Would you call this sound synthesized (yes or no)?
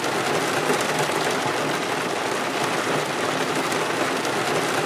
no